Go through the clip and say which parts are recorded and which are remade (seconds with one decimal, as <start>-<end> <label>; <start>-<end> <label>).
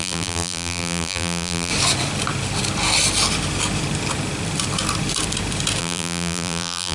0.0-1.7 remade; 1.7-5.8 recorded; 5.8-6.9 remade